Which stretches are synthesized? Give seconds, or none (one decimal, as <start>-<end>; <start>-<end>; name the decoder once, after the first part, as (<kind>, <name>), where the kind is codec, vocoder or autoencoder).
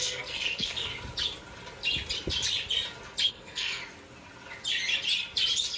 0.0-0.9 (codec, SNAC); 3.3-3.8